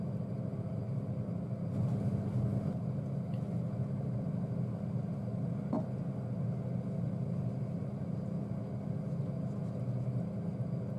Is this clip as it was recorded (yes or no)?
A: yes